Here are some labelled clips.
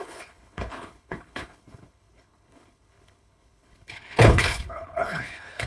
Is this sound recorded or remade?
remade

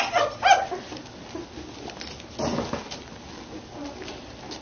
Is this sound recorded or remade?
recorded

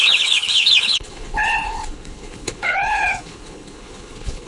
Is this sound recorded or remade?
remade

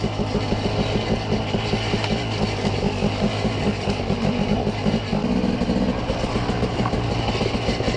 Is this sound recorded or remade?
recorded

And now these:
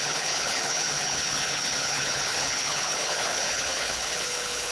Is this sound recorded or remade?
remade